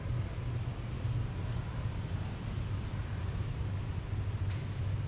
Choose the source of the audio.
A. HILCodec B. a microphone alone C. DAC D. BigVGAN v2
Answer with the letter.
B